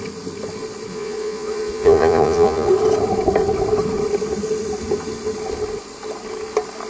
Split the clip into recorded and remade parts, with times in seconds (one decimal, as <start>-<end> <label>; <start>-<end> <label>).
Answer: 0.0-0.9 recorded; 0.9-2.7 remade; 2.7-6.9 recorded